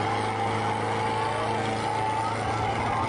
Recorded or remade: recorded